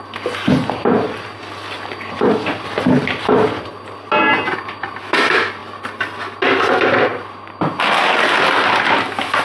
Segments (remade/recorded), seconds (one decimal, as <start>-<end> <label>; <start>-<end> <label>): 0.0-9.4 recorded